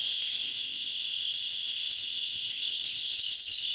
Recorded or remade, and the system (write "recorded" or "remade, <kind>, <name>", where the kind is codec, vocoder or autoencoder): remade, codec, ZipCodec